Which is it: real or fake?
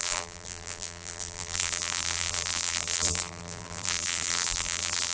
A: fake